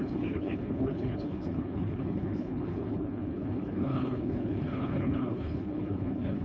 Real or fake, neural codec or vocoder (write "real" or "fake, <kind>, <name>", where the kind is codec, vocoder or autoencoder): fake, codec, HILCodec